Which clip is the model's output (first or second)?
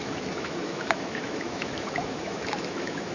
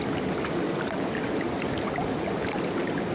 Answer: first